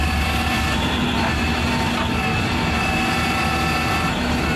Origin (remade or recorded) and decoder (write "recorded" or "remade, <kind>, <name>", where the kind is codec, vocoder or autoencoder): recorded